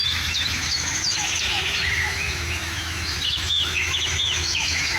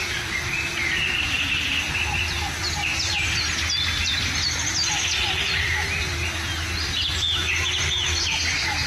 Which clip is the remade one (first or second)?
first